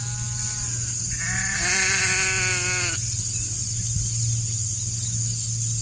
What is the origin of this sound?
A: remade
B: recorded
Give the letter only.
B